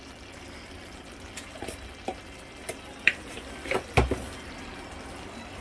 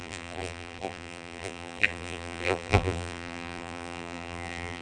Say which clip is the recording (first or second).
first